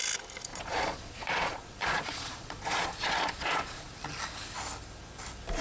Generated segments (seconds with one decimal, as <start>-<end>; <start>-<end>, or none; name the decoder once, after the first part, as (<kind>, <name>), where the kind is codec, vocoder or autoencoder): 0.5-3.9 (vocoder, Vocos)